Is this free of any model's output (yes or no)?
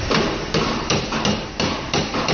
yes